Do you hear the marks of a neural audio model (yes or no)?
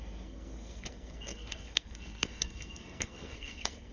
yes